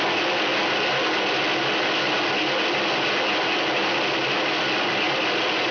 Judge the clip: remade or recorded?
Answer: recorded